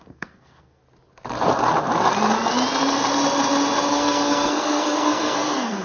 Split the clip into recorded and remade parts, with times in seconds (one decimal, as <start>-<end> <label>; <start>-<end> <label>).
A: 0.0-0.8 remade; 0.8-3.9 recorded; 3.9-5.8 remade